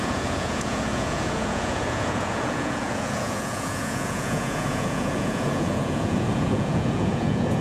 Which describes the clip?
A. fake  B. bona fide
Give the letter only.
A